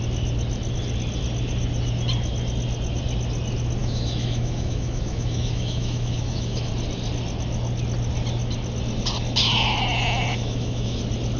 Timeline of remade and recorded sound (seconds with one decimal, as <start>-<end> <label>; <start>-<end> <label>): 0.0-3.8 recorded; 3.8-6.7 remade; 6.7-10.3 recorded; 10.3-11.0 remade; 11.0-11.4 recorded